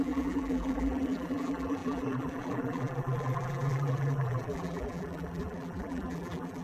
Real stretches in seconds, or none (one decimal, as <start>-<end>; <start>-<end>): none

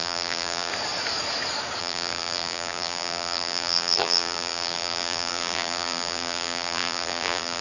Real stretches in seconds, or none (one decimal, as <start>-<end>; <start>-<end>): 0.7-1.8

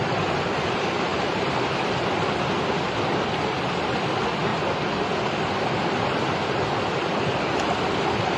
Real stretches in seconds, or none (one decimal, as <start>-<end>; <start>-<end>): 4.5-7.8

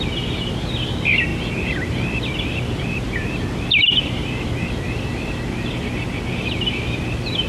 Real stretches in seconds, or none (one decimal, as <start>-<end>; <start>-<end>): 0.0-1.3; 5.8-7.5

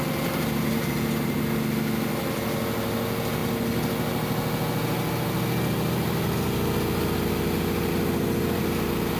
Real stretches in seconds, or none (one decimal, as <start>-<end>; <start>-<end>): 0.0-9.2

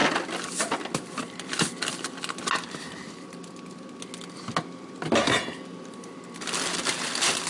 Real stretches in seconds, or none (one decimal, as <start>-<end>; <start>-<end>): 0.0-7.5